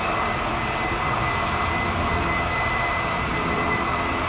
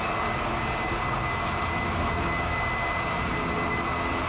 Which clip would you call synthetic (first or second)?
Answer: first